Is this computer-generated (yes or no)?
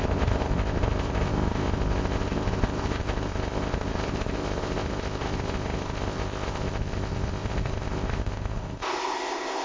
yes